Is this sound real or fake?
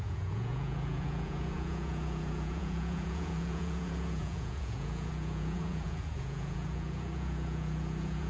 fake